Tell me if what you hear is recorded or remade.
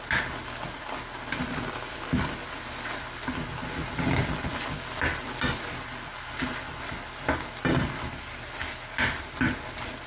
recorded